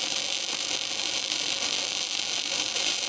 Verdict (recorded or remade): remade